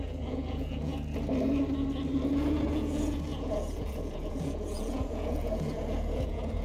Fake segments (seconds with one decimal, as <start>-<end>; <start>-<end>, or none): 0.0-0.9; 2.3-6.6